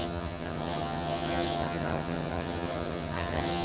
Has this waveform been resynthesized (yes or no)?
yes